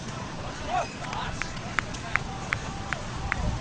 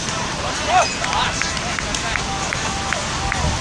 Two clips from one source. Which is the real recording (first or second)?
second